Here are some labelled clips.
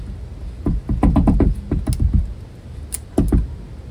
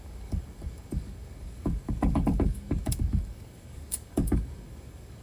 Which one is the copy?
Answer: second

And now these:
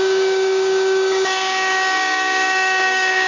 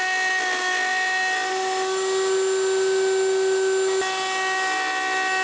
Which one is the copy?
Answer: first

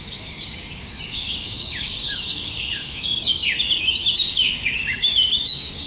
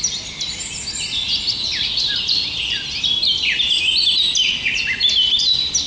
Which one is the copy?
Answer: first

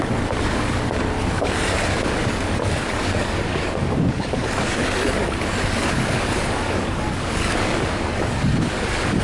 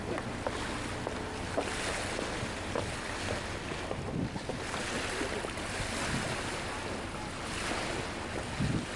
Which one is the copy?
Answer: first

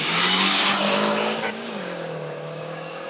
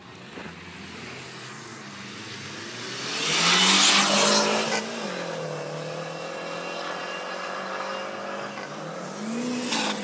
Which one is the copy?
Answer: first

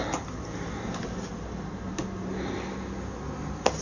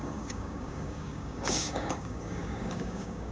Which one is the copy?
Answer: second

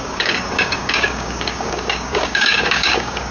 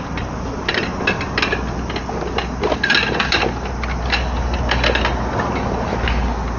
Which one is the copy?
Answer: first